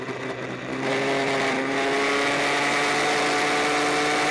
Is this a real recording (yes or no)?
yes